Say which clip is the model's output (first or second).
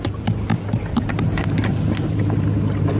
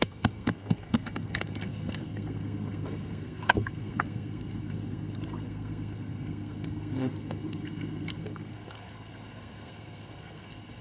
second